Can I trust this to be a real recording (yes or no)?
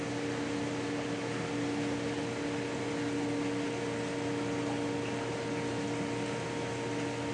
yes